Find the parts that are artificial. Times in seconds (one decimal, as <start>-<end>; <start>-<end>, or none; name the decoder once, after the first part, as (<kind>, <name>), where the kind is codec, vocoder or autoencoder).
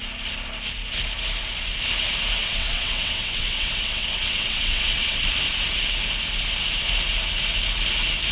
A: 2.4-5.2 (vocoder, WaveNeXt)